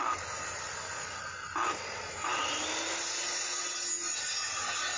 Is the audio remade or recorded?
recorded